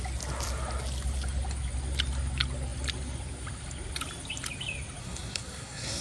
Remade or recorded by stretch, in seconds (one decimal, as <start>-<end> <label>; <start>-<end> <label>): 0.0-5.0 recorded; 5.0-6.0 remade